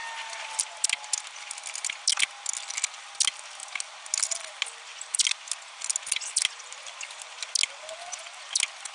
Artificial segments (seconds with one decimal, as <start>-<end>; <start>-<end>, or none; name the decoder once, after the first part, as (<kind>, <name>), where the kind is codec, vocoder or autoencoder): none